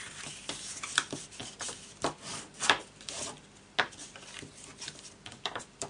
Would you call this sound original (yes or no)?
yes